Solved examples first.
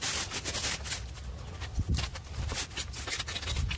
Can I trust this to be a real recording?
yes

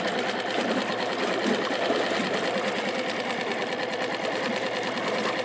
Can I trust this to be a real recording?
yes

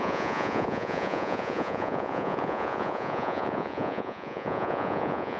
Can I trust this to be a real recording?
no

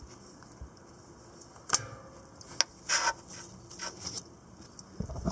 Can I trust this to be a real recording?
yes